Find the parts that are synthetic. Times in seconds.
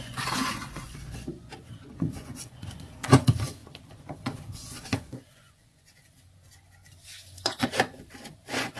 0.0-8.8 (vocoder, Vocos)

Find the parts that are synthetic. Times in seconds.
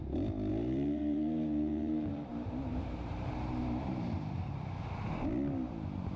0.5-2.3 (vocoder, BigVGAN v2); 2.7-4.8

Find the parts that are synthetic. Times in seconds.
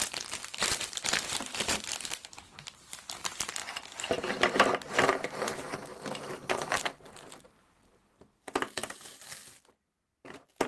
0.0-5.9 (vocoder, BigVGAN v2); 6.8-8.8; 10.1-10.7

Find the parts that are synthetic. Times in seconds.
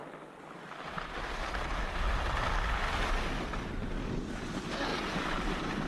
4.9-5.5 (vocoder, BigVGAN v2)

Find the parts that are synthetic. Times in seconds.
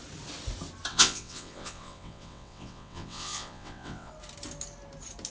0.9-4.1 (vocoder, WaveNeXt)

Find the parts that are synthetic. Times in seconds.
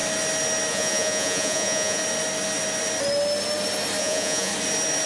0.7-2.0 (vocoder, Vocos); 4.0-4.5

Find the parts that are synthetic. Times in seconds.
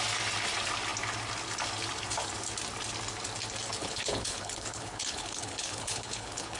3.8-6.6 (codec, HILCodec)